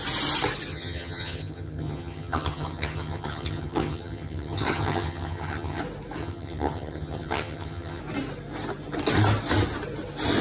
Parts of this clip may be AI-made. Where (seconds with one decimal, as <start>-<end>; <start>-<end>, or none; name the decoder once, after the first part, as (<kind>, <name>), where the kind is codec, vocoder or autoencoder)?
0.7-5.8 (vocoder, HiFi-GAN); 6.2-8.0